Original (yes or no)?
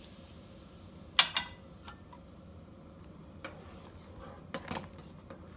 yes